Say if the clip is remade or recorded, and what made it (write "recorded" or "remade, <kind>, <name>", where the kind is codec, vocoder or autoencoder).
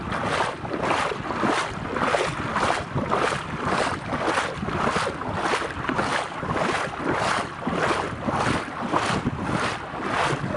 recorded